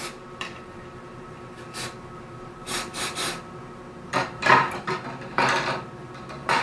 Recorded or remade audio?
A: remade